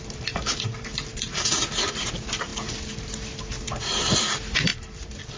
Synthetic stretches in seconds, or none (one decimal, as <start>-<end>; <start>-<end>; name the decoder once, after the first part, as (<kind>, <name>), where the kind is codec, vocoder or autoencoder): 0.0-0.5 (vocoder, BigVGAN v2); 2.1-2.5; 3.8-5.4